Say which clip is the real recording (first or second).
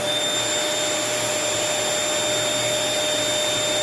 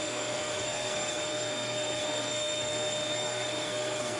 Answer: first